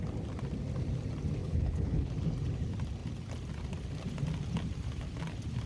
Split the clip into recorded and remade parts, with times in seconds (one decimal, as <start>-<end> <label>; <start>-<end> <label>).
0.0-1.4 recorded; 1.4-2.1 remade; 2.1-5.7 recorded